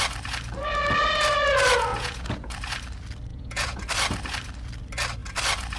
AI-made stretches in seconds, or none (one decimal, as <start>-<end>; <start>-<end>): 1.9-2.5; 3.3-3.8